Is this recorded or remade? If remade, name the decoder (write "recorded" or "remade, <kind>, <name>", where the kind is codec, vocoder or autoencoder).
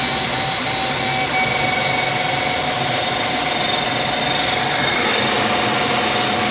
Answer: recorded